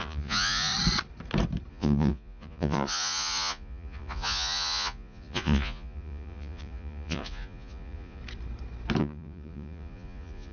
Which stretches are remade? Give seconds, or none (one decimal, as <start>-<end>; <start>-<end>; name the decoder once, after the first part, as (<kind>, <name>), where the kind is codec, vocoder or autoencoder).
0.0-0.7 (vocoder, Vocos); 1.7-8.2; 9.0-10.5